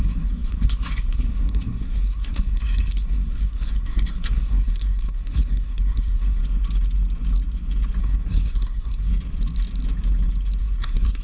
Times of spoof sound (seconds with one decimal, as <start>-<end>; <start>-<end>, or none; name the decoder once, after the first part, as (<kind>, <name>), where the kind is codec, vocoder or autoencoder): 0.0-6.4 (codec, SNAC); 8.0-9.1; 10.6-11.2

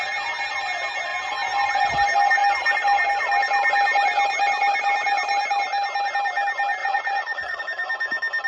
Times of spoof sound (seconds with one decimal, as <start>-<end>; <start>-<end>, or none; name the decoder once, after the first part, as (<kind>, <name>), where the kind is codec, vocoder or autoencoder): 6.8-7.6 (vocoder, Vocos)

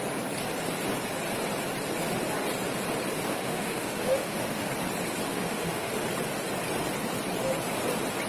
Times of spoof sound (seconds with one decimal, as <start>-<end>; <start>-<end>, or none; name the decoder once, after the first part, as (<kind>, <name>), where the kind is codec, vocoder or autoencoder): 3.3-4.7 (autoencoder, DAC-VAE); 5.3-5.9